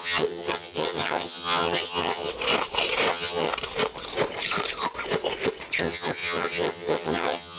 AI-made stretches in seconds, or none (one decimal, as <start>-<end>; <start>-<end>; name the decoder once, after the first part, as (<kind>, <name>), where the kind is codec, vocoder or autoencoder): 0.0-2.3 (vocoder, HiFi-GAN); 3.1-3.5; 5.8-7.6